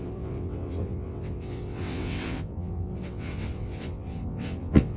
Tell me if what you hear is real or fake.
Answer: fake